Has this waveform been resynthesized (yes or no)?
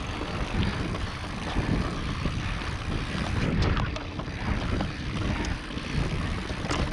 no